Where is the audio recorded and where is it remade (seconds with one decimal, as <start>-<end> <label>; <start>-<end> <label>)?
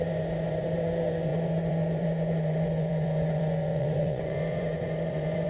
0.0-5.5 remade